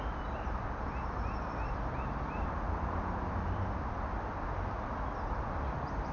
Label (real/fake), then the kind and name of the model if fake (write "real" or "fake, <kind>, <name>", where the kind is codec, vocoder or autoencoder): real